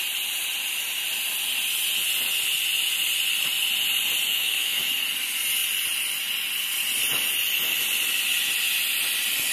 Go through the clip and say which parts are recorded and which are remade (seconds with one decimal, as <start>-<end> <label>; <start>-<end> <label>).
0.0-4.3 recorded; 4.3-4.9 remade; 4.9-9.5 recorded